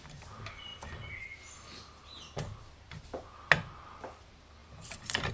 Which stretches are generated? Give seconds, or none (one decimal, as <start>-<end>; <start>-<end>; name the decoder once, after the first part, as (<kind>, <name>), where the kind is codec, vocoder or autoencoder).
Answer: 4.6-5.3 (vocoder, BigVGAN v2)